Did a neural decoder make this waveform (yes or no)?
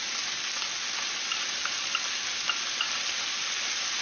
no